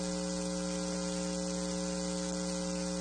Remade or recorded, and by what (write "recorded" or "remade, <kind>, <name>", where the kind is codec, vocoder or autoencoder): recorded